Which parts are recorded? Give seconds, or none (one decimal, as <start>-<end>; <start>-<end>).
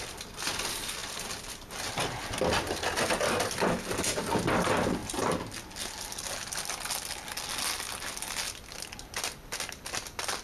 0.0-1.0; 1.5-10.4